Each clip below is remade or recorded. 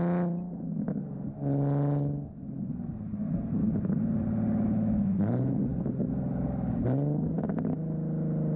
recorded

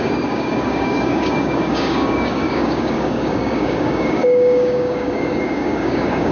remade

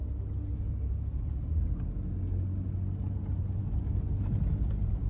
recorded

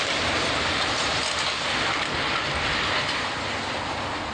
recorded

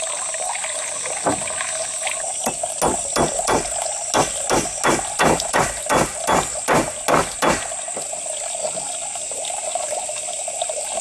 recorded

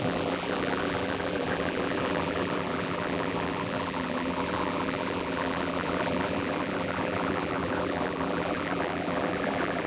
remade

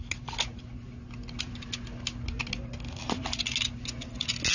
recorded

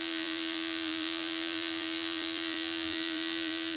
remade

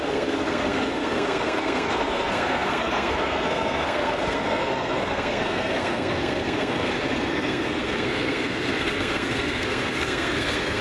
remade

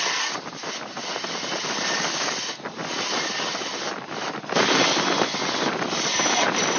recorded